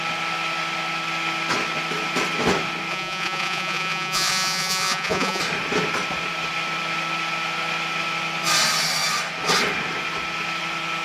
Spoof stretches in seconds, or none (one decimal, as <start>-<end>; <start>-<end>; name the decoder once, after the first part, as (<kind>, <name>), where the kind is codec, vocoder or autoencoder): 2.9-5.4 (vocoder, Vocos)